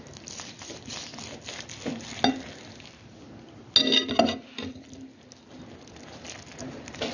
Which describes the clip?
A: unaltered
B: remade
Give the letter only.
A